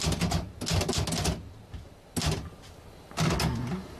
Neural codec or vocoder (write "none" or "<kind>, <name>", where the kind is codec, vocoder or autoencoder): none